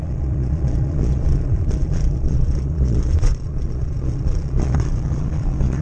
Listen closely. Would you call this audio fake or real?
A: fake